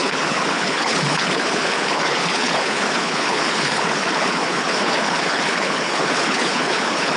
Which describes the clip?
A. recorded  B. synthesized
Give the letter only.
B